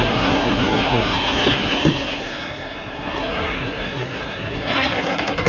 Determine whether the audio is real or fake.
fake